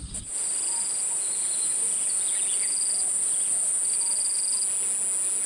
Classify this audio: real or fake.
real